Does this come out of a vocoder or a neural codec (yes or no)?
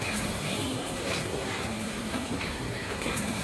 yes